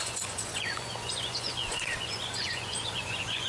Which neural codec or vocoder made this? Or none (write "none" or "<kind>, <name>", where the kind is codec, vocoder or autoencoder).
vocoder, Vocos